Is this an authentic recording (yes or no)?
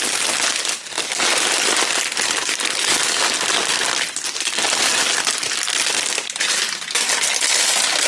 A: yes